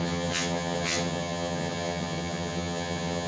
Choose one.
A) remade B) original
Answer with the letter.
A